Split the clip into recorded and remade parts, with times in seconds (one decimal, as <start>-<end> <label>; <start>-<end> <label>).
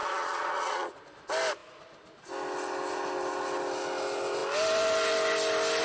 0.0-1.0 remade; 1.0-5.8 recorded